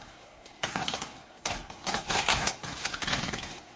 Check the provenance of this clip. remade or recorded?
remade